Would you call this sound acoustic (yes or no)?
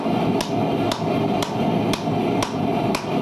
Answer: yes